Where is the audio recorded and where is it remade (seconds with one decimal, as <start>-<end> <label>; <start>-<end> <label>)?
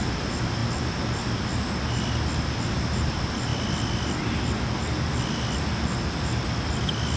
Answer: 0.0-7.2 recorded